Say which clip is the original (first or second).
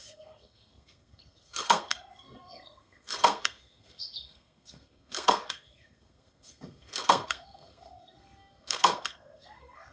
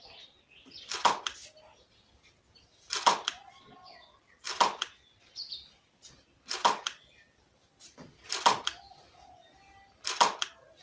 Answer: second